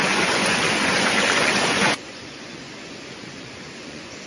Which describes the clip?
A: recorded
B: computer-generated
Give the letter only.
B